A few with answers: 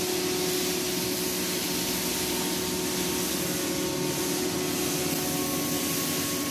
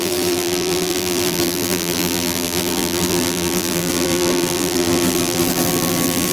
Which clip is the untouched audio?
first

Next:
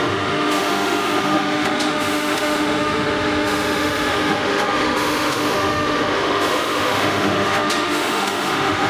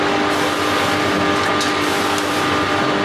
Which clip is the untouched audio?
second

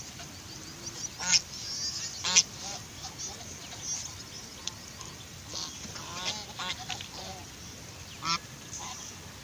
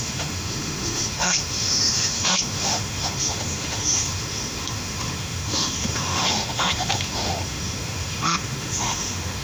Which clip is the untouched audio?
first